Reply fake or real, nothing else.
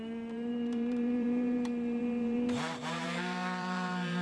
fake